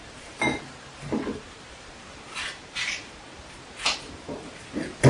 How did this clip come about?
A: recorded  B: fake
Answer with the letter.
B